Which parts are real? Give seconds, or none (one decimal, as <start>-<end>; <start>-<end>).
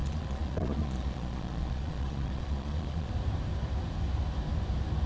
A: 3.1-5.1